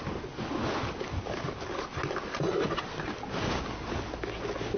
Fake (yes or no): no